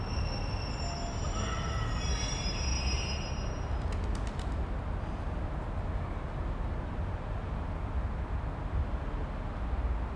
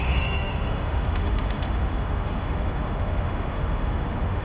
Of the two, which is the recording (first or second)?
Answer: first